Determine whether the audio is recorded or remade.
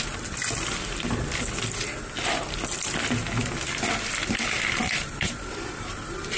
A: recorded